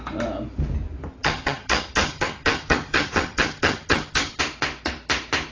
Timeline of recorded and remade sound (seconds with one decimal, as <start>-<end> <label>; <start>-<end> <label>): 0.0-1.1 recorded; 1.1-4.4 remade; 4.4-5.5 recorded